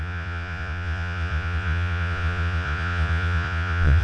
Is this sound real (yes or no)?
no